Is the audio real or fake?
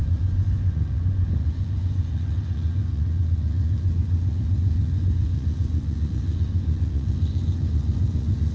fake